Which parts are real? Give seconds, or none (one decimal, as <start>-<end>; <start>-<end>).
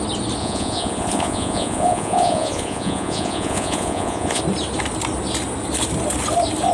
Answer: 0.0-0.4; 4.4-6.7